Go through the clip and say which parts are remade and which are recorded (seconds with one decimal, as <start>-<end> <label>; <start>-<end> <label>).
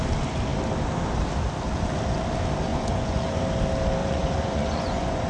0.0-2.7 recorded; 2.7-3.4 remade; 3.4-4.0 recorded; 4.0-5.3 remade